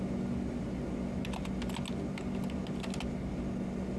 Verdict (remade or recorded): recorded